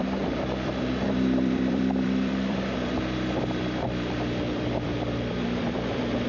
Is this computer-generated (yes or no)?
yes